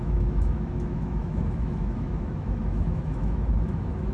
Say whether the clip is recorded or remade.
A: remade